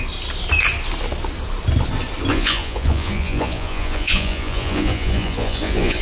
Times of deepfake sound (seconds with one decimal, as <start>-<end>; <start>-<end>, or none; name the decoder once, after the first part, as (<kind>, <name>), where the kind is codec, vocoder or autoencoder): 2.3-6.0 (vocoder, Vocos)